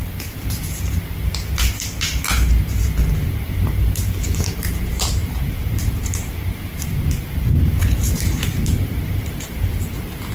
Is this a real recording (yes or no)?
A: no